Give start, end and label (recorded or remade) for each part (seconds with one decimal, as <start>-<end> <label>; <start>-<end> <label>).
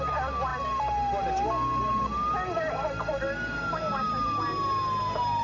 0.0-5.4 recorded